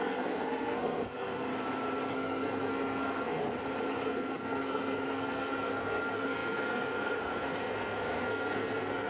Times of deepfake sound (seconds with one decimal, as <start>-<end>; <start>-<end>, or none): 0.0-1.5; 2.1-3.4; 3.9-9.1